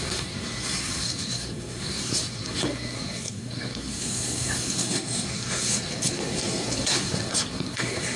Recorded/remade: remade